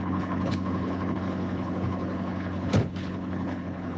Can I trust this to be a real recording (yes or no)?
no